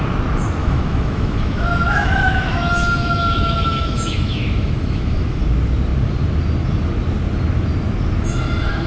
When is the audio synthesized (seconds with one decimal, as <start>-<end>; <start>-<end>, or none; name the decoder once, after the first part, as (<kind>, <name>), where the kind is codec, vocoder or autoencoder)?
0.6-5.4 (autoencoder, DAC-VAE)